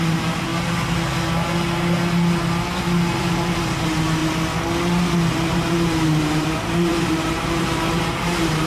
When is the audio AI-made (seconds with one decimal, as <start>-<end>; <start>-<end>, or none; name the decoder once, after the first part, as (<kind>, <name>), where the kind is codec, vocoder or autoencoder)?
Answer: 0.0-0.5 (vocoder, BigVGAN v2); 2.8-4.2; 5.3-8.7